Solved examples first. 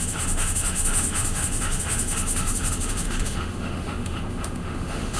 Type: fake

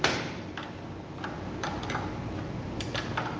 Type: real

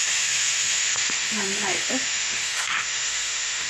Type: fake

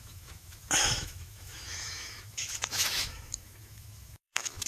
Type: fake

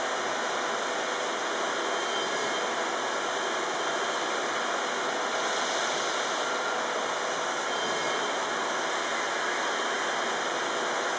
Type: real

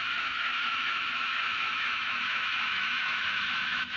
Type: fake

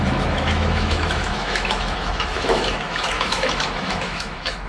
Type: fake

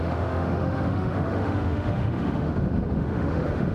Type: fake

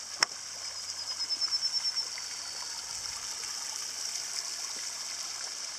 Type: real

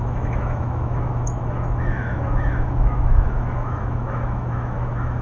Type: fake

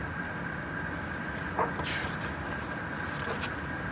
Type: real